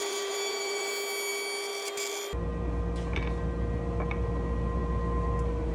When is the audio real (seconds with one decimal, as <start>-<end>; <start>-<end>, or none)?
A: 0.9-5.7